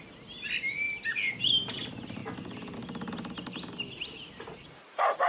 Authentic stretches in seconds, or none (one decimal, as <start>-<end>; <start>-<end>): 0.0-5.3